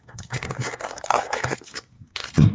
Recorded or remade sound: remade